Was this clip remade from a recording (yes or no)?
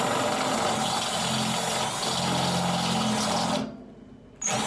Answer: no